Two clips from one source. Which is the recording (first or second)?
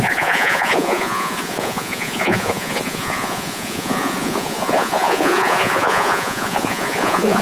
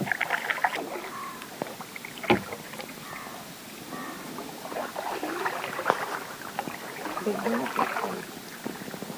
second